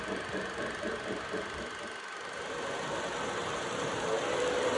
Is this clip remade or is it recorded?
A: remade